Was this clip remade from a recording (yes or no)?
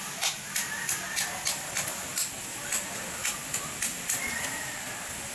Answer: no